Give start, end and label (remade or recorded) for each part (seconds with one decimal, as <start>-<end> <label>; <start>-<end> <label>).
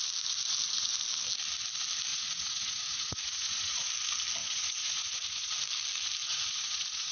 0.0-2.1 recorded; 2.1-3.9 remade; 3.9-4.4 recorded; 4.4-5.5 remade; 5.5-6.2 recorded; 6.2-7.1 remade